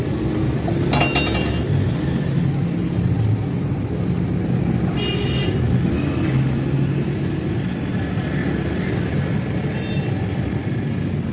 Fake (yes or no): no